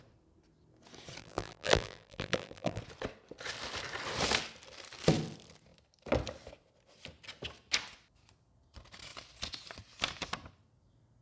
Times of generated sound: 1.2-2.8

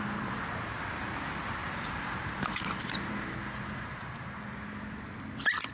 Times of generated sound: 1.6-4.4

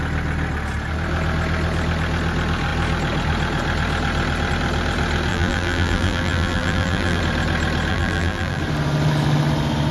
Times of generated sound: 5.3-7.2; 7.9-8.6

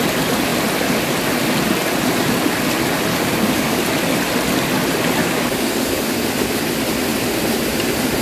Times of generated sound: 3.1-3.8; 5.2-6.1

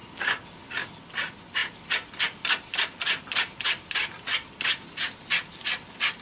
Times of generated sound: none